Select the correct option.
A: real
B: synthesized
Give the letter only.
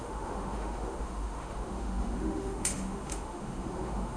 B